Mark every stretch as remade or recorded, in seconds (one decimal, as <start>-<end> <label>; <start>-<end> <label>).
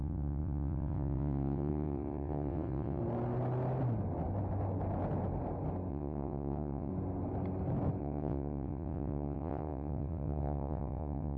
0.0-3.0 remade; 3.0-5.9 recorded; 5.9-6.9 remade; 6.9-8.0 recorded; 8.0-11.4 remade